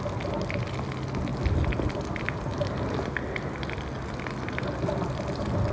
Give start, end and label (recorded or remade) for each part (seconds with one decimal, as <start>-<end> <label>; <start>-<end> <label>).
0.0-5.7 recorded